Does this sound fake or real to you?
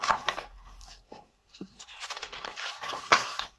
fake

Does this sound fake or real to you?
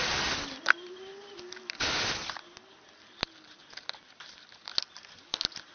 real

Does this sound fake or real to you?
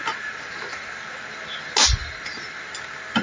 real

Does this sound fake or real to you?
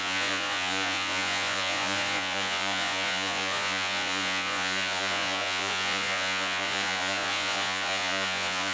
fake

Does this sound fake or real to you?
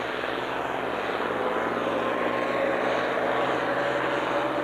real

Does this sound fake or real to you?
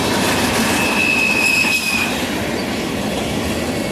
real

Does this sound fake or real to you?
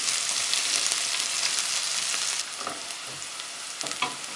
real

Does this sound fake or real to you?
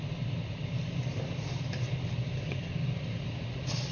real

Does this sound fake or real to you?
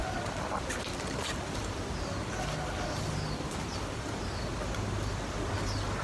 real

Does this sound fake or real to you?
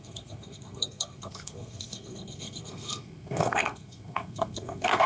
fake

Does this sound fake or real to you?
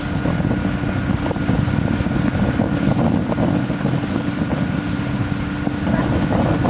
real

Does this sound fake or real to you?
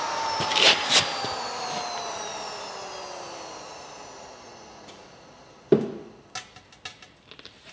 real